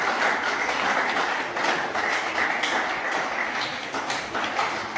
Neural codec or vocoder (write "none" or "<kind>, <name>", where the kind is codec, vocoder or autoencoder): none